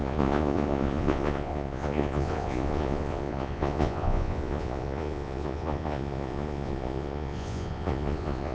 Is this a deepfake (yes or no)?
yes